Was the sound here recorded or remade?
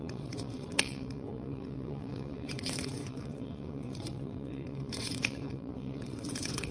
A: remade